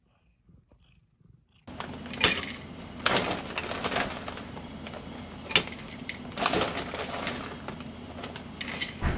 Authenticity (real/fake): real